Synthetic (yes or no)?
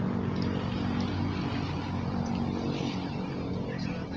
no